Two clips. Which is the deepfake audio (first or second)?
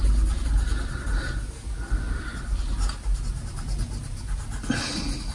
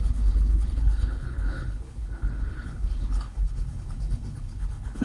second